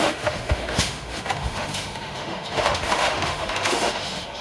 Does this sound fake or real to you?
fake